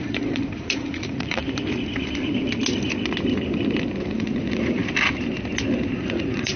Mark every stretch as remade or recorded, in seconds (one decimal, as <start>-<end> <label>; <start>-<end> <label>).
0.0-1.4 remade; 1.4-4.1 recorded; 4.1-4.8 remade; 4.8-6.0 recorded; 6.0-6.6 remade